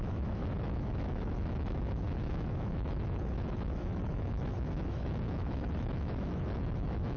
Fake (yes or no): yes